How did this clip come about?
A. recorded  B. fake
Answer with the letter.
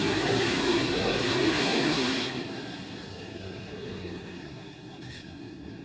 B